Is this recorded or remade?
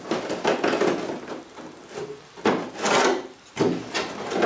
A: recorded